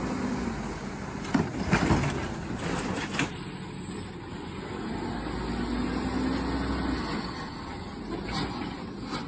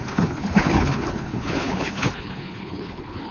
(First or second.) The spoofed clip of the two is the second